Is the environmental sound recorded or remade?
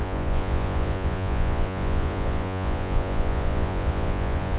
remade